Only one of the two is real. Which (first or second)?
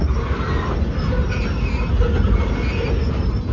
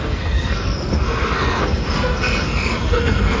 first